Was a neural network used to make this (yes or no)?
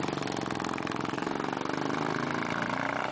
no